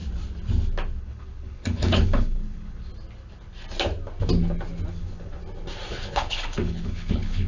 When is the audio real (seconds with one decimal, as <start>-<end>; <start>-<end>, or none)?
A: 0.0-1.0; 2.9-4.9; 5.4-5.9